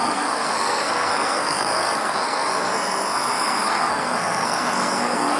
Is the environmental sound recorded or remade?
remade